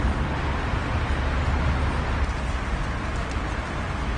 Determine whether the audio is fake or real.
real